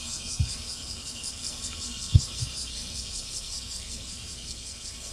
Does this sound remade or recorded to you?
remade